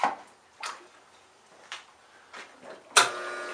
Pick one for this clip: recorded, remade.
recorded